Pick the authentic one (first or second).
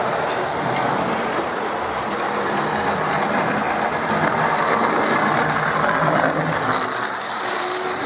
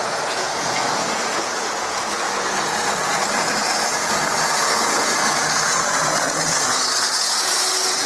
first